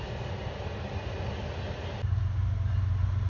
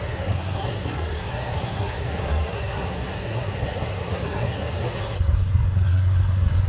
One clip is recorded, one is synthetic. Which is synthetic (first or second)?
second